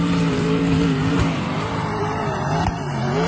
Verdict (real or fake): fake